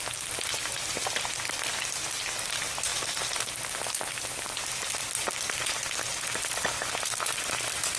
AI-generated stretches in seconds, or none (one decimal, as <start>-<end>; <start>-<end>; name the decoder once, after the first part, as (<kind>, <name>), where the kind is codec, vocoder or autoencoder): none

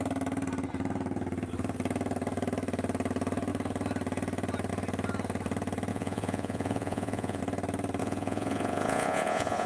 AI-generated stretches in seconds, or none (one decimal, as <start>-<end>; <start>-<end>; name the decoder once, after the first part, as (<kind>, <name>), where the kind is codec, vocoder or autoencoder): 5.9-7.4 (vocoder, Vocos); 8.0-9.7

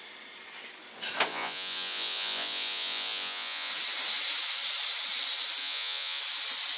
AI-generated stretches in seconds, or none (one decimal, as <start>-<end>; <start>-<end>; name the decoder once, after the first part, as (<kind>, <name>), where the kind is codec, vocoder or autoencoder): 1.3-3.7 (vocoder, Vocos); 5.6-6.2

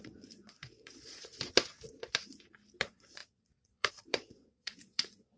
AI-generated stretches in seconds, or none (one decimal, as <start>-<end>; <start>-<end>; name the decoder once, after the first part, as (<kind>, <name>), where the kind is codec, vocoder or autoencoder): 0.0-1.3 (vocoder, Vocos); 2.8-5.4

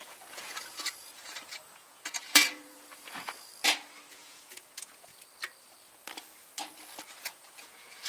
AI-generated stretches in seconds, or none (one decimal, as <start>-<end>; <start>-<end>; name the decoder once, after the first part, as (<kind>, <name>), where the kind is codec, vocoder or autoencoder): 0.0-3.5 (vocoder, Vocos); 4.1-5.1; 7.2-8.1

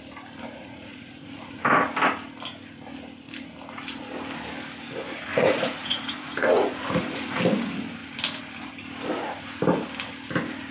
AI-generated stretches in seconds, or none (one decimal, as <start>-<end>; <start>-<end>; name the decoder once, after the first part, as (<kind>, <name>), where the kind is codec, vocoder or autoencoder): 0.6-1.6 (vocoder, Vocos); 5.3-7.4